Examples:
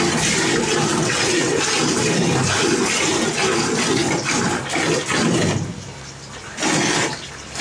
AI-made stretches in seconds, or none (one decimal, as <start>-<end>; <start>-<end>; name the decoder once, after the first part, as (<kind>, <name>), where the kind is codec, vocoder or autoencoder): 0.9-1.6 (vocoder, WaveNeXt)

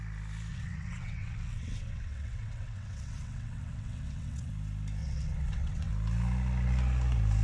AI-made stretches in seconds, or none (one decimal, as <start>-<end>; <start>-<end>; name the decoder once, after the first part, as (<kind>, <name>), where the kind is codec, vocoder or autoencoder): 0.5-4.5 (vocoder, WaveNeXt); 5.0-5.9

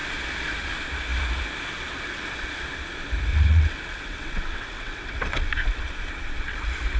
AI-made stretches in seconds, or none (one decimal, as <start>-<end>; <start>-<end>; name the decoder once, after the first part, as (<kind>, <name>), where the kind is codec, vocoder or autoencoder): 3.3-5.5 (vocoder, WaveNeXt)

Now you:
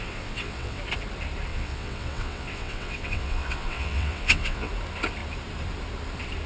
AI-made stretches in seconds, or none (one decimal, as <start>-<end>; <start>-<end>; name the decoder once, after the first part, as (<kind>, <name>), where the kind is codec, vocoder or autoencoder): 0.0-0.8 (vocoder, WaveNeXt); 1.5-4.7

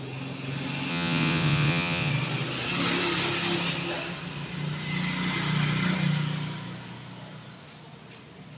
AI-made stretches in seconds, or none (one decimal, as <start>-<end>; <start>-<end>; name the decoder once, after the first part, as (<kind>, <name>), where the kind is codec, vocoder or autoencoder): 0.9-2.1 (vocoder, WaveNeXt)

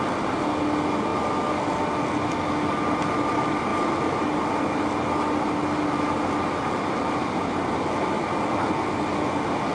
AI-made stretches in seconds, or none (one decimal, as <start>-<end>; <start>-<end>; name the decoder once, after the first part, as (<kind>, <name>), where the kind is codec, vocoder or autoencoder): none

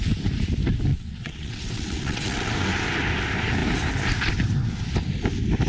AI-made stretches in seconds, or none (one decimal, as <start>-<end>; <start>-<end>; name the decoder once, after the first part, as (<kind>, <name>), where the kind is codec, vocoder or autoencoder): 0.9-2.5 (vocoder, WaveNeXt)

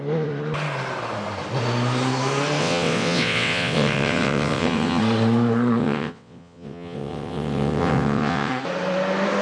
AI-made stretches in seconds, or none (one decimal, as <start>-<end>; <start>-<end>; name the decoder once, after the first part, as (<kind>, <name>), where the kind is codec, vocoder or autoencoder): 2.6-5.0 (vocoder, WaveNeXt); 5.8-8.5